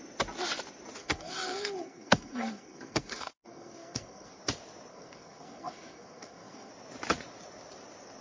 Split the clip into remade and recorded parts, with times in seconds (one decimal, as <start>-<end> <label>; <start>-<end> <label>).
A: 0.0-1.0 recorded; 1.0-4.4 remade; 4.4-4.9 recorded; 4.9-6.7 remade; 6.7-8.2 recorded